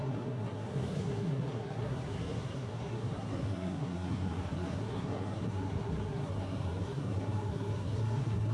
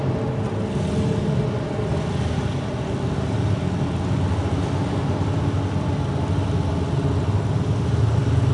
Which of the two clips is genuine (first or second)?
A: second